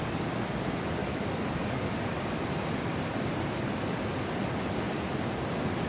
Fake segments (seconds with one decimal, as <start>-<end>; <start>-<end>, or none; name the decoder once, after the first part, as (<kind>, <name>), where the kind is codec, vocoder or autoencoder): 1.0-1.9 (codec, DAC)